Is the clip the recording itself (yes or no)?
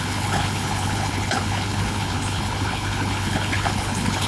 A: no